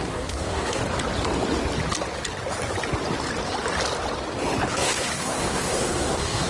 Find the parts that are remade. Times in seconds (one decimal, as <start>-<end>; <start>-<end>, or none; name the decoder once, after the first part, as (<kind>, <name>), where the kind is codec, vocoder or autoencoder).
0.0-0.8 (codec, SNAC); 4.7-6.5